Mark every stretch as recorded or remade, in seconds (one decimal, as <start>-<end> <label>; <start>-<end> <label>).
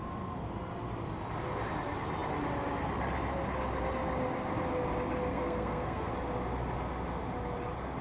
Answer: 0.0-5.3 recorded; 5.3-6.1 remade; 6.1-8.0 recorded